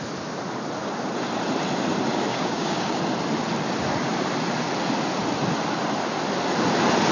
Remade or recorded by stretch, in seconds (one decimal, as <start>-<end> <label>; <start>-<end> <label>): 0.0-2.3 recorded; 2.3-3.0 remade; 3.0-7.1 recorded